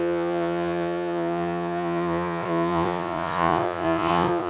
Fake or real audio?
fake